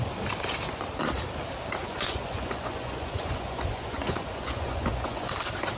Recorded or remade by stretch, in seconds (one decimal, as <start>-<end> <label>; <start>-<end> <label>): 0.0-1.8 recorded; 1.8-5.3 remade; 5.3-5.8 recorded